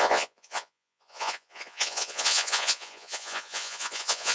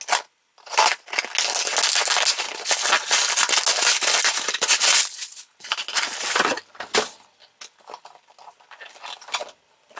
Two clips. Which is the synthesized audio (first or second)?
first